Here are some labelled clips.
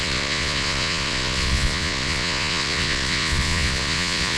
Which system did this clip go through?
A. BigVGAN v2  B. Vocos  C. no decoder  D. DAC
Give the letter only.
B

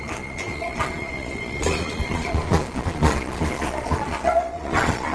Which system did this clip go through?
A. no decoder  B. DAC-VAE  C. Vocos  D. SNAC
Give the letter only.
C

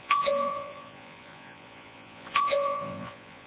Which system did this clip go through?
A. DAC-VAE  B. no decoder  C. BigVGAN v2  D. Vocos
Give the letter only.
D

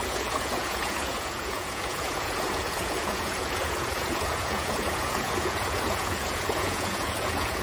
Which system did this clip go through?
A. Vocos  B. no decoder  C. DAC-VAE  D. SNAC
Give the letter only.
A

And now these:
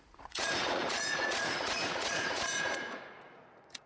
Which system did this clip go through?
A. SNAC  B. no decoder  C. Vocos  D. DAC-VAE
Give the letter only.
C